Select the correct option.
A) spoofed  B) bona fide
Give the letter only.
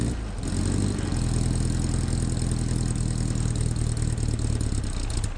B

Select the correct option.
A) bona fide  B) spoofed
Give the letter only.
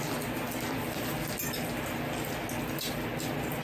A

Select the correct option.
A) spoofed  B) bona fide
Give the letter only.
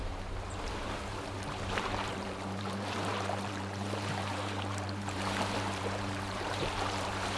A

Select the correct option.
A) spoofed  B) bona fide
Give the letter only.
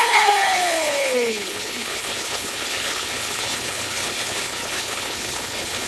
A